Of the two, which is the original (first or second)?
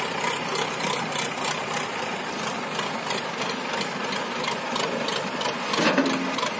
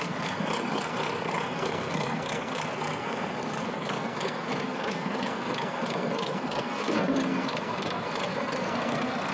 first